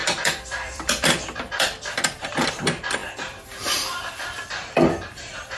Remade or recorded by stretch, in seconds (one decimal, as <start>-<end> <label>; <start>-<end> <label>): 0.0-5.6 remade